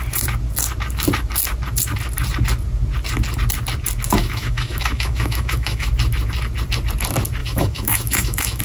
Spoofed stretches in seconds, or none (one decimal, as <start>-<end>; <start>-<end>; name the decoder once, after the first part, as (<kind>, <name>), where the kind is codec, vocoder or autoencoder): 4.2-5.9 (autoencoder, DAC-VAE); 7.4-8.6